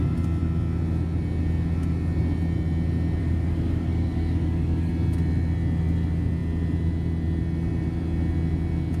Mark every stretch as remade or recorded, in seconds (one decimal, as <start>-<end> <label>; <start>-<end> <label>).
0.0-3.2 recorded; 3.2-4.9 remade; 4.9-9.0 recorded